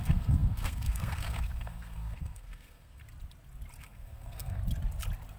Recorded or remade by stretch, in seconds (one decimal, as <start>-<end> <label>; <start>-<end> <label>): 0.0-3.0 remade; 3.0-3.8 recorded; 3.8-4.6 remade; 4.6-5.4 recorded

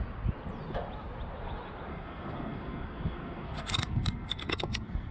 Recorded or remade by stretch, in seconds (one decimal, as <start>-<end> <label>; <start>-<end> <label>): 0.0-1.9 recorded; 1.9-5.1 remade

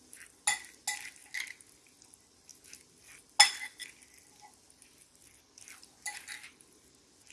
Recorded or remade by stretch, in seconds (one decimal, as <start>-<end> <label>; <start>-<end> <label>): 0.0-7.3 recorded

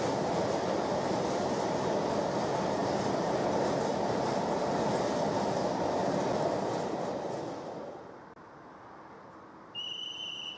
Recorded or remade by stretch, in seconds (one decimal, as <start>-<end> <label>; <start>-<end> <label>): 0.0-10.6 recorded

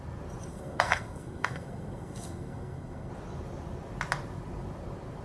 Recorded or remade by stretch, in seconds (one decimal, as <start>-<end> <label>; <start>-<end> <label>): 0.0-0.5 recorded; 0.5-3.1 remade; 3.1-5.2 recorded

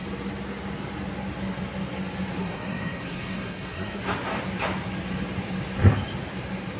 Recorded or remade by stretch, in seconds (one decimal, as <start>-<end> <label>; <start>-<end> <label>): 0.0-2.4 recorded; 2.4-4.0 remade; 4.0-6.8 recorded